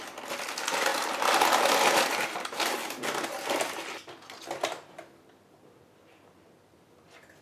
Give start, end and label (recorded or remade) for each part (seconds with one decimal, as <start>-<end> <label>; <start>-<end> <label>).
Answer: 0.0-7.4 recorded